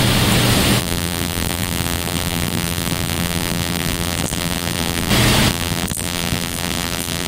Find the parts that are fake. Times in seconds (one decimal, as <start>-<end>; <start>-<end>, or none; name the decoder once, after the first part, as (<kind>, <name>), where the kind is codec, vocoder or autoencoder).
0.8-5.1 (vocoder, BigVGAN v2); 5.5-7.3